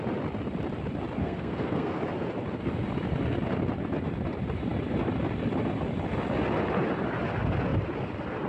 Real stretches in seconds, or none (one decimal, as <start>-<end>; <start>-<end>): 0.0-1.2; 2.0-8.5